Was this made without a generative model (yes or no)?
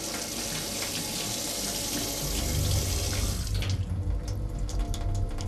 yes